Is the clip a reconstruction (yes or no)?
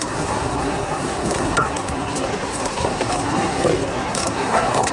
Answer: yes